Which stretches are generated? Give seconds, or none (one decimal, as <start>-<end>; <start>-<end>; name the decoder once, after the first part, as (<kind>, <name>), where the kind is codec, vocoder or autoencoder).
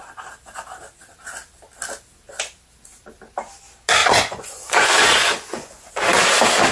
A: 4.0-5.9 (vocoder, Vocos)